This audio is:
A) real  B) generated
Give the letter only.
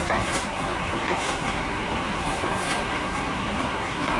B